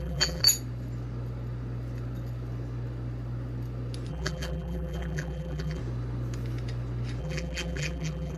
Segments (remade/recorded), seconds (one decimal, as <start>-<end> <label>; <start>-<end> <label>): 0.0-0.4 remade; 0.4-4.1 recorded; 4.1-5.8 remade; 5.8-7.2 recorded; 7.2-8.4 remade